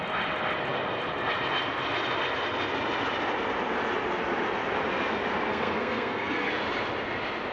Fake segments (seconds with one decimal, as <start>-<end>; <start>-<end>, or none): 5.5-6.5